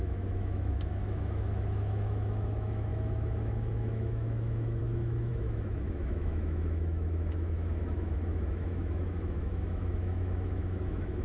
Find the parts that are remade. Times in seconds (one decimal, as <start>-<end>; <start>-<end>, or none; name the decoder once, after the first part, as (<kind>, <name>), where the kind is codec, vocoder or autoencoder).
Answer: 0.0-11.2 (autoencoder, DAC-VAE)